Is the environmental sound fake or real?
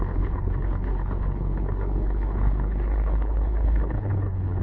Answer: fake